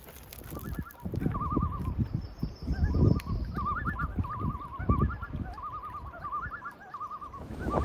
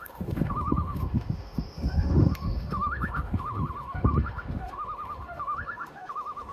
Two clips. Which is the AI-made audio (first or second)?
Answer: second